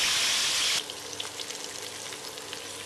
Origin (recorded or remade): recorded